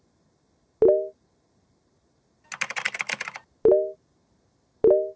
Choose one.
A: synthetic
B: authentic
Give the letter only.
B